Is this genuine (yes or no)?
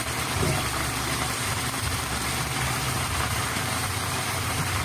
no